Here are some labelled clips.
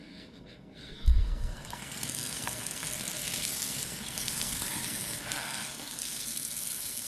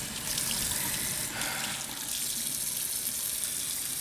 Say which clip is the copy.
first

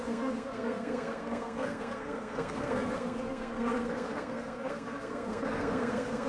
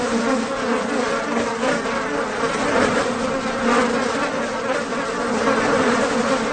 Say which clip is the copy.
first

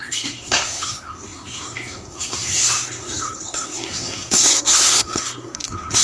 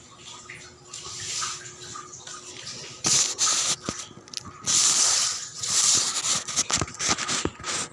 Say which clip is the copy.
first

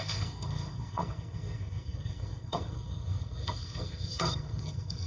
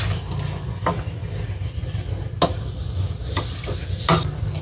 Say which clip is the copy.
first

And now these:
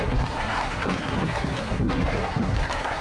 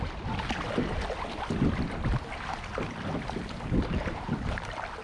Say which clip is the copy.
first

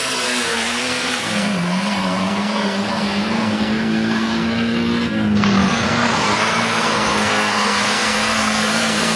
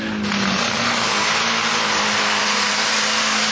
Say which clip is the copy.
first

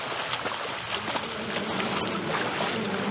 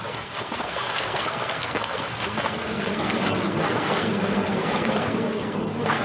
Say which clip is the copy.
second